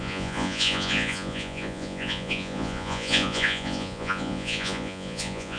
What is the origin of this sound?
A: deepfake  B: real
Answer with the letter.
A